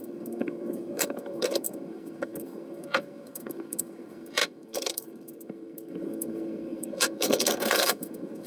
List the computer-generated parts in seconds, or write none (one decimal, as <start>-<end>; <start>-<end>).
0.0-8.5